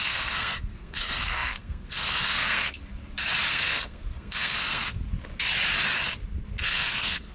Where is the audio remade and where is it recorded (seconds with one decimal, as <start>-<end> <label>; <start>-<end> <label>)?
0.0-2.8 remade; 2.8-3.5 recorded; 3.5-5.0 remade; 5.0-6.6 recorded; 6.6-7.3 remade